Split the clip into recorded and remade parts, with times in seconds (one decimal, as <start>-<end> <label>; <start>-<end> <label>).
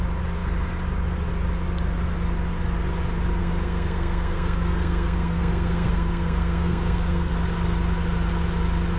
0.0-3.4 recorded; 3.4-7.3 remade; 7.3-9.0 recorded